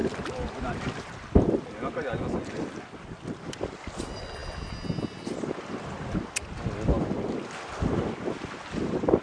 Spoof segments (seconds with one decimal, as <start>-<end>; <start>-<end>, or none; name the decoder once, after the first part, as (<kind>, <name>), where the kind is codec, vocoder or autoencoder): none